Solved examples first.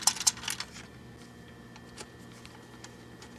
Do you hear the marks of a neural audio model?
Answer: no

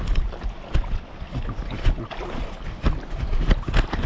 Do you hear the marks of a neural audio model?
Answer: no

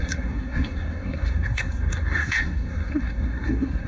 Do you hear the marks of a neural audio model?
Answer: yes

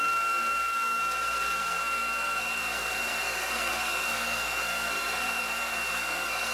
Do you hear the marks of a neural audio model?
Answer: yes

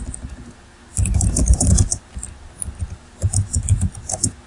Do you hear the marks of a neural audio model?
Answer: no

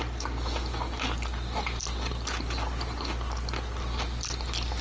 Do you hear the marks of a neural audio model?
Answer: no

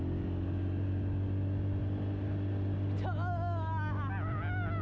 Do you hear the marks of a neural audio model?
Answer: no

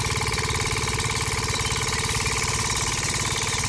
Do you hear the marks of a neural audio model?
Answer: no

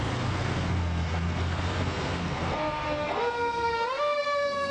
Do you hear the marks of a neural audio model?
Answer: yes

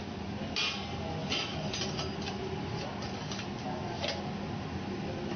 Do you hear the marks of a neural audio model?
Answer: no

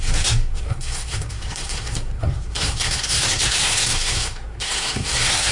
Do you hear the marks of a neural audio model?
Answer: yes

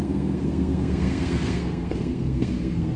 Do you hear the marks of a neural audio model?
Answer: yes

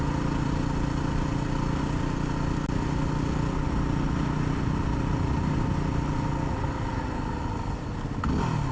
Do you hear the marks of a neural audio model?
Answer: no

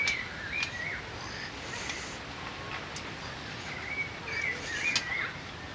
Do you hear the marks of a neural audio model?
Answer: no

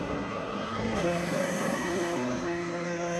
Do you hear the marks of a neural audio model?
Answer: yes